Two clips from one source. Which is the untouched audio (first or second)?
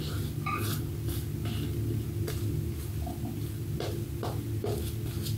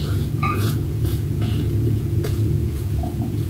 first